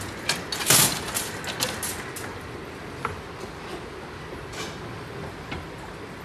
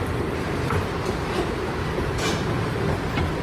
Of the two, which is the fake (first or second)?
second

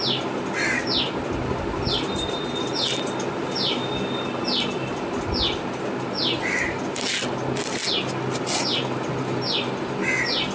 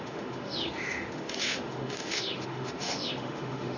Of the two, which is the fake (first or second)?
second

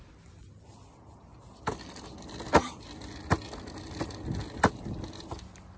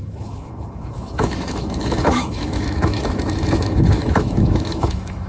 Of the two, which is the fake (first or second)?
second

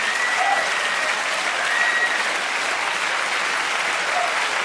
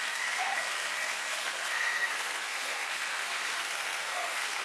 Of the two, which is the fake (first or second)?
second